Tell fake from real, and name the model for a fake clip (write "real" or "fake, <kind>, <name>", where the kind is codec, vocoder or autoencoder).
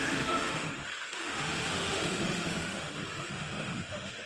fake, autoencoder, DAC-VAE